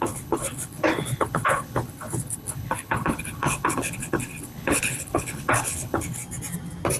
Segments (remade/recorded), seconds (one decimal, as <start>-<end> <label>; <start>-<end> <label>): 0.0-6.2 remade; 6.2-7.0 recorded